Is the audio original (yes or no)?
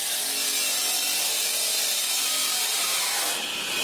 yes